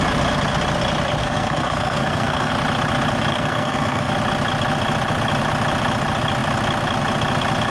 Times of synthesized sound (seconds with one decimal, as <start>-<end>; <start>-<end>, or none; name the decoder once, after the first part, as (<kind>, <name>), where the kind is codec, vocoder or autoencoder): 1.2-2.5 (codec, SNAC); 3.3-4.1